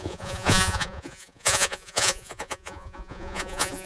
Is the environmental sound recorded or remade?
remade